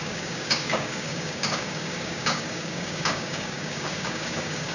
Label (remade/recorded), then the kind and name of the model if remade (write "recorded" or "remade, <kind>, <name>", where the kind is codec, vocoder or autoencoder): remade, codec, DAC